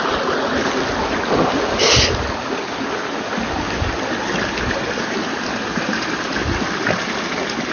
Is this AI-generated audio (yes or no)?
no